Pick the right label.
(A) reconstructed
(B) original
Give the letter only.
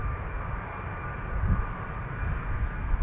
B